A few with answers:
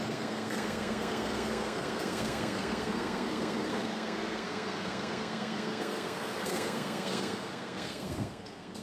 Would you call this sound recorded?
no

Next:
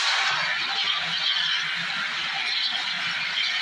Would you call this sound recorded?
yes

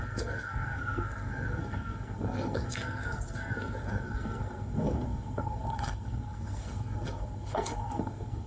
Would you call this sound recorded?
no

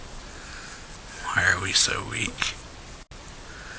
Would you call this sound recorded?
yes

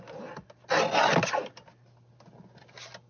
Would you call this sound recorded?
yes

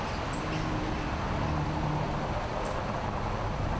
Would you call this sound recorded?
yes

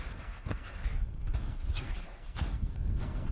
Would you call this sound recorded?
no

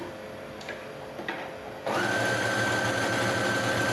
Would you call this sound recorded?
yes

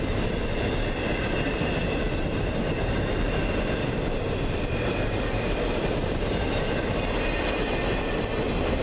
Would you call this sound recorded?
yes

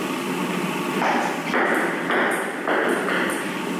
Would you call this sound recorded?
yes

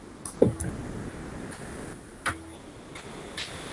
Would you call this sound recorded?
yes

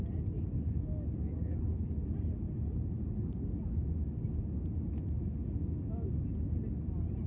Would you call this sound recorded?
yes